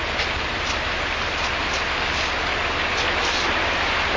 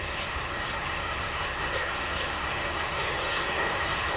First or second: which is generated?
second